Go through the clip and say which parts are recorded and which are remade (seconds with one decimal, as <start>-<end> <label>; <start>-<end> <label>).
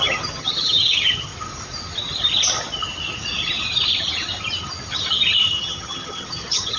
0.0-1.3 remade; 1.3-5.4 recorded; 5.4-6.8 remade